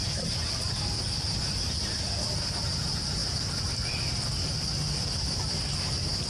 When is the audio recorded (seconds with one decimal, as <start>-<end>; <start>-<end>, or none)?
0.0-6.3